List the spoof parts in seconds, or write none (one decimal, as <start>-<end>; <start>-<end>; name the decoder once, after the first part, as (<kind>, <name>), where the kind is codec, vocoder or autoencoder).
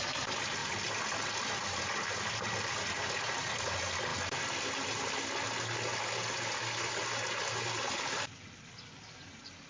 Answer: none